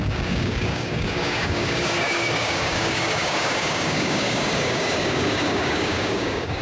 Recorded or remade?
remade